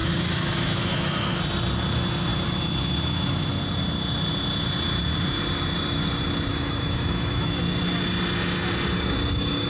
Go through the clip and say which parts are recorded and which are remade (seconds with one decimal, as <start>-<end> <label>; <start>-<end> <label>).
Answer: 0.0-1.4 remade; 1.4-6.5 recorded; 6.5-7.6 remade; 7.6-9.7 recorded